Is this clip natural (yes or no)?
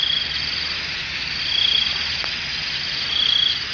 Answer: yes